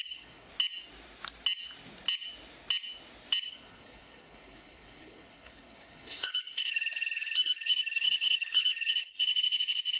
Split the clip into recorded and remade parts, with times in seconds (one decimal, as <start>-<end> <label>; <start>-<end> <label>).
0.0-0.5 remade; 0.5-3.4 recorded; 3.4-10.0 remade